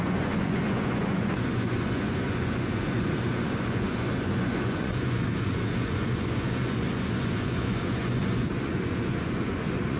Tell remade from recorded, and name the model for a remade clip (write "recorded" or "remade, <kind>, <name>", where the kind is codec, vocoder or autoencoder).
remade, vocoder, Vocos